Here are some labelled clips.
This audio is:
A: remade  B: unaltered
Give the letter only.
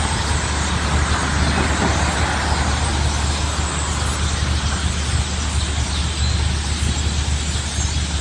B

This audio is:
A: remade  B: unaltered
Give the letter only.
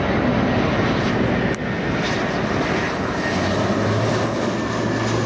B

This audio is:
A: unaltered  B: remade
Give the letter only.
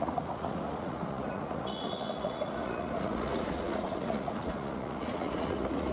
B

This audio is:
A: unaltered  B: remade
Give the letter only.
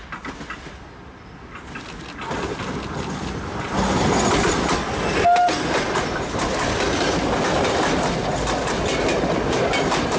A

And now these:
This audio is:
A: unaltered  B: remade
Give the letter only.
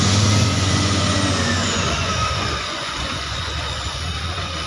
B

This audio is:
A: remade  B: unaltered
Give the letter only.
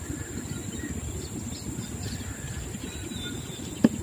B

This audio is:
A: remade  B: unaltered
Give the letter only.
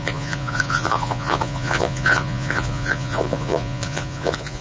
A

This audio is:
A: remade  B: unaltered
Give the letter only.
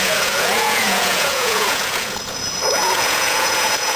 A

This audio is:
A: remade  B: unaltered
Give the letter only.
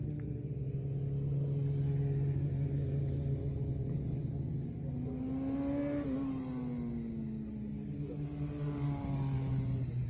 B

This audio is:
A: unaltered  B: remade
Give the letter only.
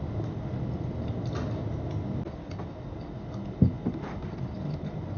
A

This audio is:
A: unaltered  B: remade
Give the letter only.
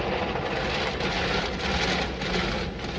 A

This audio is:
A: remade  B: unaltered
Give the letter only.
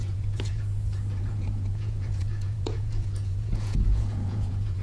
A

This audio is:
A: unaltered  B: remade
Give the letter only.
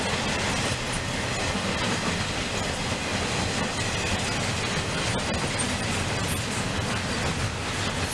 A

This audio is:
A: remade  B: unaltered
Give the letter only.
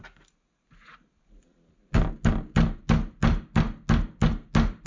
B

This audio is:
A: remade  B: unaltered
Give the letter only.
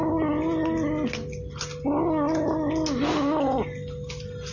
B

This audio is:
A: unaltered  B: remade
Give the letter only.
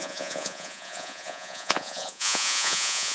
B